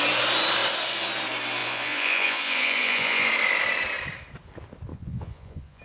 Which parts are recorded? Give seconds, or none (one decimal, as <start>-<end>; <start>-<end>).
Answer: 0.0-1.6; 3.3-4.9